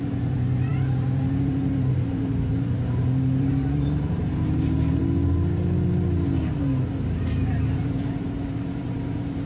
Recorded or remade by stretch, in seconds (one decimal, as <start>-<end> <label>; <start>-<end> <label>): 0.0-5.0 remade; 5.0-7.2 recorded; 7.2-9.5 remade